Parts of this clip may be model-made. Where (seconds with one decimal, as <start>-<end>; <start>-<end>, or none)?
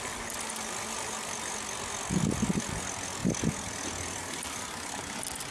none